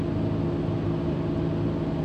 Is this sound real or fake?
real